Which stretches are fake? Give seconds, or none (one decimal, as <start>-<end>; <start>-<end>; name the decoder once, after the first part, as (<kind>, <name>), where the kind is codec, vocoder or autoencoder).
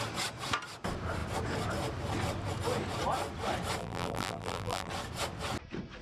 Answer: 3.8-4.9 (vocoder, BigVGAN v2)